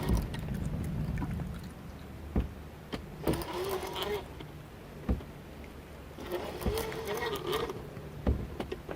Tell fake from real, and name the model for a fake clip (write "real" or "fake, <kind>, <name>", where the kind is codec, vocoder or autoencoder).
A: real